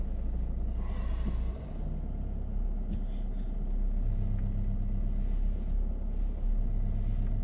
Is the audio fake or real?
real